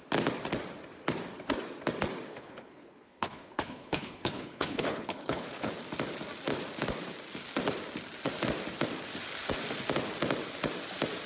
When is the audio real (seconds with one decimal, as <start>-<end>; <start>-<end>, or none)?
0.0-2.3; 5.7-11.3